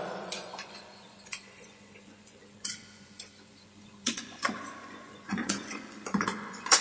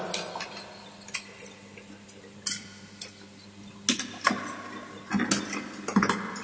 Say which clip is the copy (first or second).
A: first